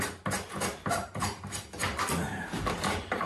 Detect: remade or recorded remade